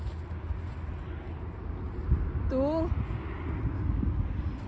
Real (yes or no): yes